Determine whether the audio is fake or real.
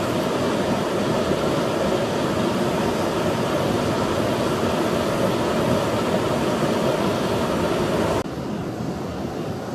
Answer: real